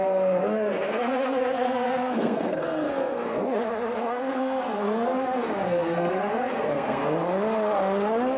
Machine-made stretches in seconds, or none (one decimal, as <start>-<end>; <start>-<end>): 0.0-7.0